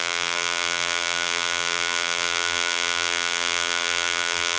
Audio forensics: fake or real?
fake